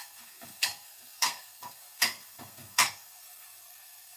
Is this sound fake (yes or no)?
yes